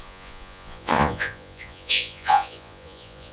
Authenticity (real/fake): fake